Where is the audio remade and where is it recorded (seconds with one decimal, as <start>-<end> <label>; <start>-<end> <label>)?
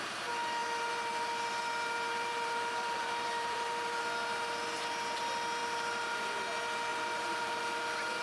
0.0-0.6 recorded; 0.6-4.0 remade; 4.0-5.6 recorded; 5.6-6.4 remade; 6.4-6.9 recorded; 6.9-7.6 remade; 7.6-8.2 recorded